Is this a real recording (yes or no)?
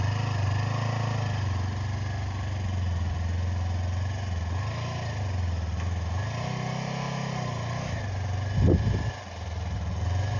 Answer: yes